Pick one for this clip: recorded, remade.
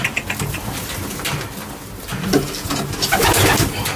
recorded